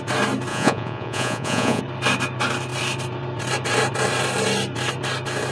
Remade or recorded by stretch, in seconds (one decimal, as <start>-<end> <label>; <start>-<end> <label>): 0.0-0.5 recorded; 0.5-1.8 remade; 1.8-5.5 recorded